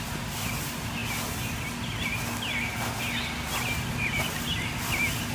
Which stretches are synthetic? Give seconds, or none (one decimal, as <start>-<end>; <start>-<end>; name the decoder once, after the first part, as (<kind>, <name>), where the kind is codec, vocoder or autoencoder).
none